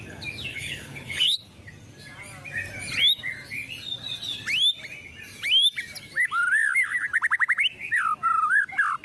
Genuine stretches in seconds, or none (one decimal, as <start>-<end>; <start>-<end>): 0.0-0.5; 1.5-9.0